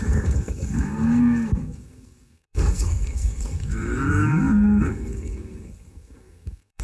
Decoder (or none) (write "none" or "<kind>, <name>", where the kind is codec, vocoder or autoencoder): codec, SNAC